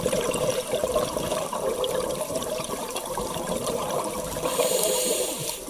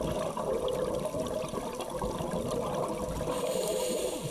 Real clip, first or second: second